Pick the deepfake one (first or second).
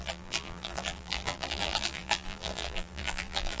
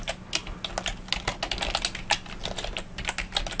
first